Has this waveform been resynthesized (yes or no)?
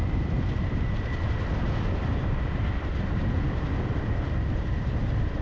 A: yes